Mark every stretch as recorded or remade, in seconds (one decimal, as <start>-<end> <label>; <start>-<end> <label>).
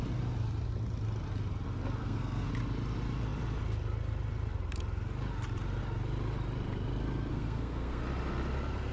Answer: 0.0-2.0 recorded; 2.0-2.5 remade; 2.5-7.3 recorded; 7.3-8.0 remade; 8.0-8.9 recorded